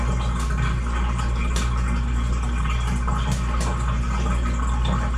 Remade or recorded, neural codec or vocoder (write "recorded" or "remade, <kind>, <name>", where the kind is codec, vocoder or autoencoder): recorded